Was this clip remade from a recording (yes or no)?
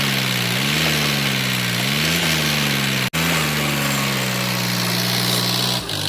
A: no